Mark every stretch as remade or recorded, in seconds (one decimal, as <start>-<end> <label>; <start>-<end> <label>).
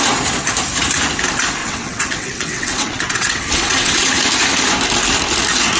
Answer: 0.0-1.6 recorded; 1.6-4.1 remade; 4.1-5.8 recorded